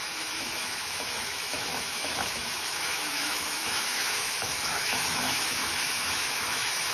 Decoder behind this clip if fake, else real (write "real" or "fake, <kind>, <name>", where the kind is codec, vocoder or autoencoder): fake, autoencoder, DAC-VAE